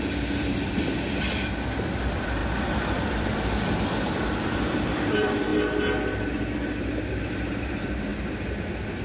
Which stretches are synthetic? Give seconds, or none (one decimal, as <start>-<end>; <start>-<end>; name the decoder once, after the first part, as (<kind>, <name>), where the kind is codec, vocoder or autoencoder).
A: 0.0-2.4 (vocoder, BigVGAN v2); 3.1-5.5; 7.6-8.1